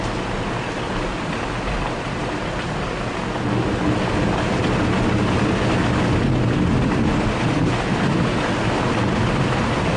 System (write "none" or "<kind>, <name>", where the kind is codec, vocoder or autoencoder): none